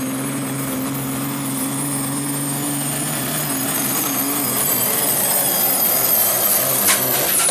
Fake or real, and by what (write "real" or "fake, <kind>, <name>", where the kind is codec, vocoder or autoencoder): real